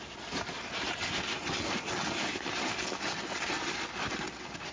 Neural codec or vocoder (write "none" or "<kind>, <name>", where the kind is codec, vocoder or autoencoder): none